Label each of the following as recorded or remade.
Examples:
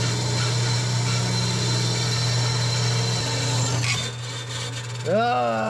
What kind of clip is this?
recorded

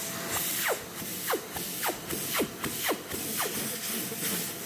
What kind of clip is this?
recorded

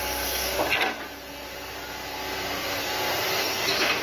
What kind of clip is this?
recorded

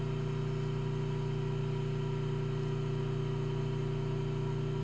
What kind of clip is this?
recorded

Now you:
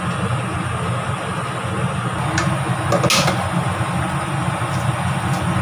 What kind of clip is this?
recorded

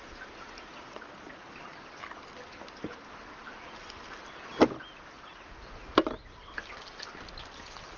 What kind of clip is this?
recorded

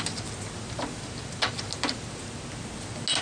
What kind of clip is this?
recorded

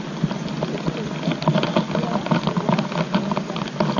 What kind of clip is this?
recorded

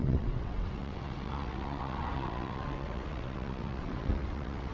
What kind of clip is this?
remade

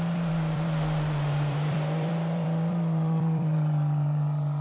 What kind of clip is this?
remade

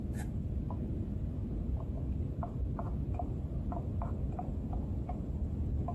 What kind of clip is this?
recorded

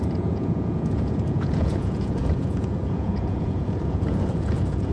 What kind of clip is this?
remade